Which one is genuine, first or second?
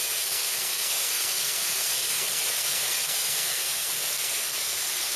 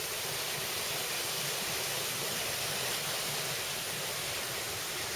second